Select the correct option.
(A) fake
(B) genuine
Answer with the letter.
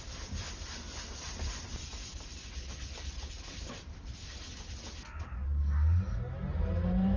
B